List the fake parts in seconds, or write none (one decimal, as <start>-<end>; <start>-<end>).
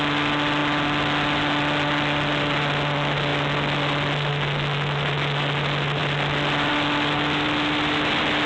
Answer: none